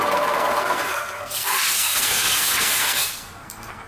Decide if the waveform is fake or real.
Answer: fake